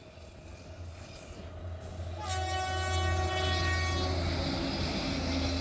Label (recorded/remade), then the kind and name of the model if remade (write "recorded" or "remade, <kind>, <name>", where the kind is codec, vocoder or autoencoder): recorded